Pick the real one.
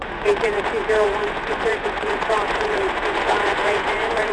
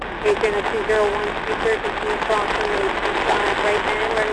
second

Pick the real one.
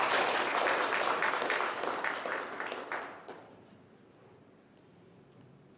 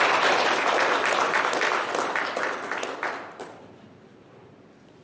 first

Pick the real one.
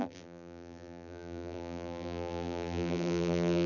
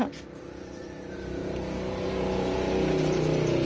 second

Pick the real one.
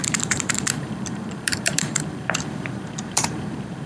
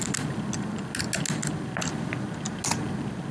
second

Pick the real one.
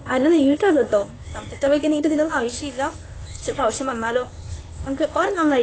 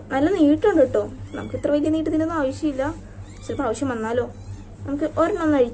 second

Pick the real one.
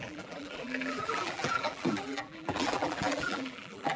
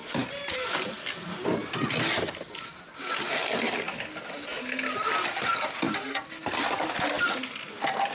second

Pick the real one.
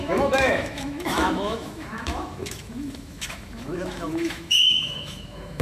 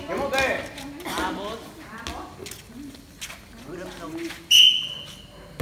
second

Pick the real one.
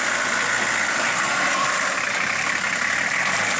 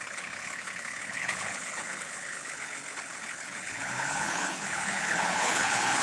first